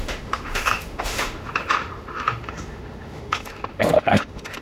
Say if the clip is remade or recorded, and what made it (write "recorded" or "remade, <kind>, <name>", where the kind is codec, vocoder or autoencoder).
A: remade, autoencoder, DAC-VAE